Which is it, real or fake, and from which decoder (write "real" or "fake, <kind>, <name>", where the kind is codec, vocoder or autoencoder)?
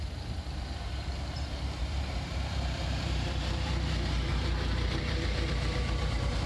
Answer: fake, vocoder, BigVGAN v2